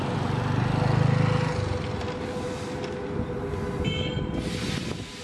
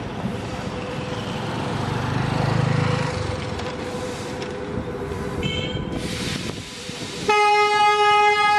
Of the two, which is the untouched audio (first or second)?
first